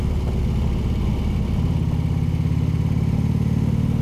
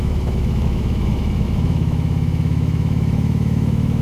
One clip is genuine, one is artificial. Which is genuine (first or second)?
first